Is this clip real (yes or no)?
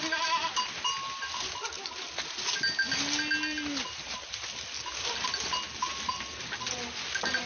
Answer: yes